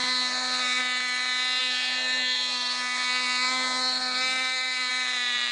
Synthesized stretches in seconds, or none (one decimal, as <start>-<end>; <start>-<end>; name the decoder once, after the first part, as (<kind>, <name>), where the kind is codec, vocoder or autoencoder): 0.0-0.8 (codec, SNAC); 1.6-4.9